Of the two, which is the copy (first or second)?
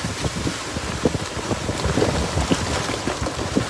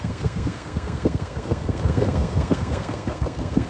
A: second